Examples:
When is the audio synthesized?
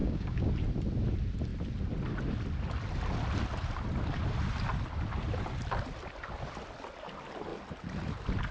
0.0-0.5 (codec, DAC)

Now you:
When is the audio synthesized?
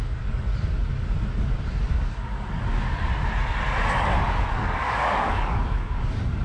0.0-0.5 (codec, DAC); 1.9-3.1; 4.5-6.4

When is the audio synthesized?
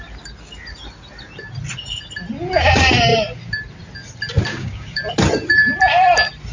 4.5-5.0 (codec, DAC)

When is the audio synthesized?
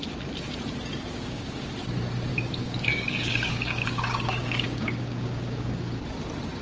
1.1-1.7 (codec, DAC); 2.3-6.0